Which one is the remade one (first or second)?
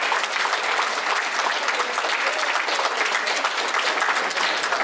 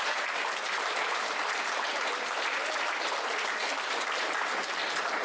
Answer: second